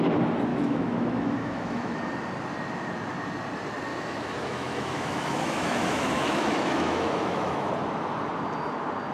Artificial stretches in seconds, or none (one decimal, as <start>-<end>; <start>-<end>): 0.5-2.0; 3.9-7.7